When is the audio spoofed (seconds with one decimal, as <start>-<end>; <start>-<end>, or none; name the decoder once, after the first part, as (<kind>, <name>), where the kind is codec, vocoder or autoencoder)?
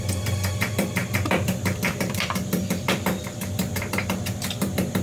0.0-5.0 (vocoder, BigVGAN v2)